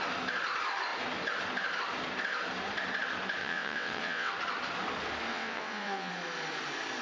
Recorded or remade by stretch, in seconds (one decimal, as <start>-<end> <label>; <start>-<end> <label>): 0.0-3.4 recorded; 3.4-4.3 remade; 4.3-5.3 recorded; 5.3-6.1 remade; 6.1-7.0 recorded